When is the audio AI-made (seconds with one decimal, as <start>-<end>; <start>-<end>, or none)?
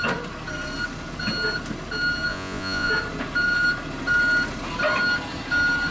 2.3-2.9